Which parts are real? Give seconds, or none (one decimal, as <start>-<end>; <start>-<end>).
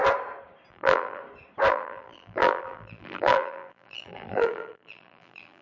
0.0-0.7; 1.2-1.7